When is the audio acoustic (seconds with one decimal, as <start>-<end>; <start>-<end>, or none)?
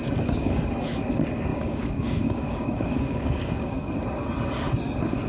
0.6-1.5; 3.9-5.3